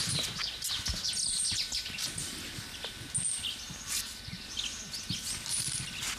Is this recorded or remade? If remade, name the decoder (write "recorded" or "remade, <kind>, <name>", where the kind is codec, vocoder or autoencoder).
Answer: recorded